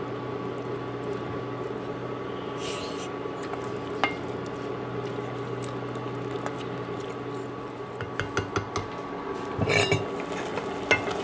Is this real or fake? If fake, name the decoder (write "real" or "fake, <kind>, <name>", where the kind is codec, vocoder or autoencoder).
real